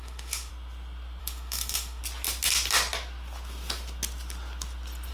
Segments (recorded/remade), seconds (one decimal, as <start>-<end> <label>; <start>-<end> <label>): 0.0-0.5 remade; 0.5-1.2 recorded; 1.2-2.0 remade; 2.0-5.1 recorded